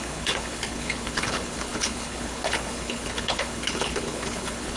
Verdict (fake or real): fake